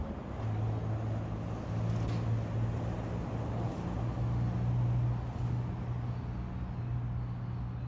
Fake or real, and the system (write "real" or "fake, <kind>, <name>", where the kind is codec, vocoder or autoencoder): real